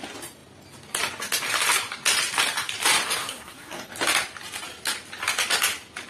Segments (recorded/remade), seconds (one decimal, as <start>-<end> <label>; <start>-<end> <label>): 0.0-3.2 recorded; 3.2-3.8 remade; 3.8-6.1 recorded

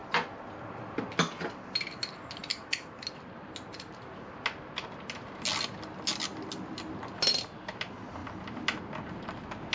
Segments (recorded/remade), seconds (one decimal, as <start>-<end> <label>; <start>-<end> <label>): 0.0-9.7 recorded

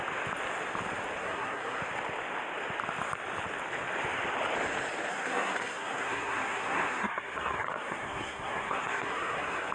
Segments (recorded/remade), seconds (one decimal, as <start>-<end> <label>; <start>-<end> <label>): 0.0-1.2 recorded; 1.2-1.8 remade; 1.8-5.1 recorded; 5.1-9.7 remade

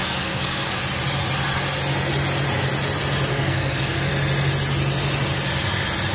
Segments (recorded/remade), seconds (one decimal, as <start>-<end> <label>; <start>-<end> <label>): 0.0-0.7 remade; 0.7-3.3 recorded; 3.3-4.1 remade; 4.1-6.1 recorded

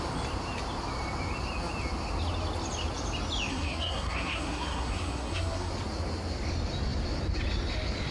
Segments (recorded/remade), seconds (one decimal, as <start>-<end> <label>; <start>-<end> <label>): 0.0-3.5 recorded; 3.5-5.7 remade; 5.7-8.1 recorded

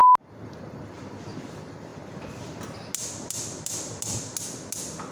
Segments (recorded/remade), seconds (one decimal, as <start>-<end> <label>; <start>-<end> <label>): 0.0-5.1 recorded